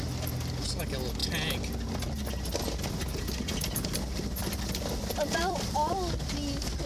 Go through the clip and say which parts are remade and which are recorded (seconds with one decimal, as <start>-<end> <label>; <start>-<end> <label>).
0.0-4.4 recorded; 4.4-6.2 remade; 6.2-6.9 recorded